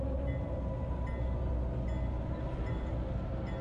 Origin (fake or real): real